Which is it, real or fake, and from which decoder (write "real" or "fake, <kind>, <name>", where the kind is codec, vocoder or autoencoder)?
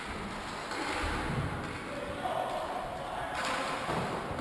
real